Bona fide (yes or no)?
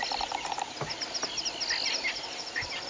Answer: yes